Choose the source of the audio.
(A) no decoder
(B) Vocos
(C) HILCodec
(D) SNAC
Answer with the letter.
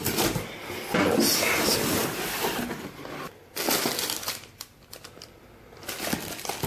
A